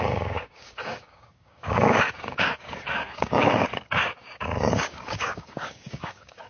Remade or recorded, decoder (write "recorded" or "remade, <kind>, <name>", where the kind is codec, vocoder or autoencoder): remade, codec, DAC